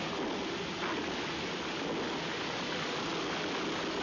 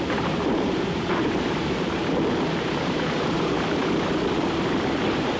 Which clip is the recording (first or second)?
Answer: first